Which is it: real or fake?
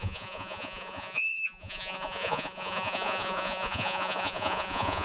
fake